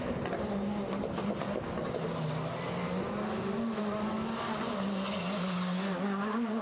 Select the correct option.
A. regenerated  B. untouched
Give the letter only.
B